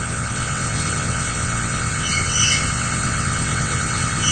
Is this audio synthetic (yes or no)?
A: yes